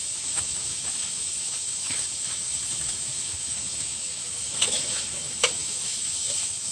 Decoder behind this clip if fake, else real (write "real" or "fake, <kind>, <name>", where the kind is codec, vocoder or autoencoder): fake, autoencoder, DAC-VAE